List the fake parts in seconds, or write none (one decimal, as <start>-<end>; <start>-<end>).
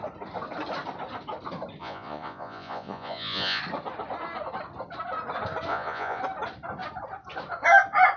1.8-3.6; 5.7-6.2